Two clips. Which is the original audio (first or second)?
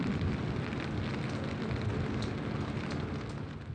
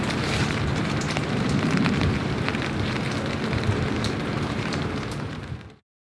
first